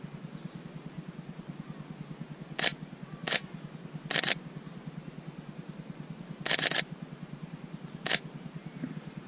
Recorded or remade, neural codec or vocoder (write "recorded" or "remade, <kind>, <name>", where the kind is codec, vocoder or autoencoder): recorded